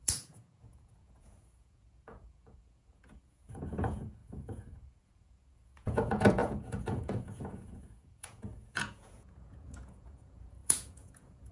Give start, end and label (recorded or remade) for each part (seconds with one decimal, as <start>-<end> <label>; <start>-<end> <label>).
0.0-11.5 remade